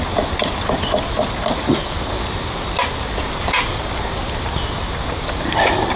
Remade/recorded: recorded